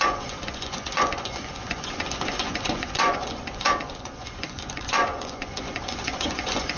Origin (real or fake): fake